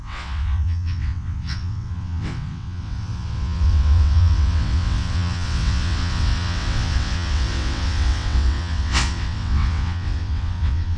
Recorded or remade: remade